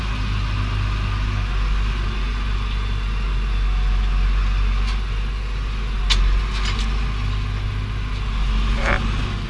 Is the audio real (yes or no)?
yes